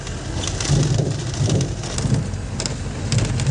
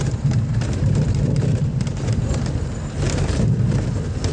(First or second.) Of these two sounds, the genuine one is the first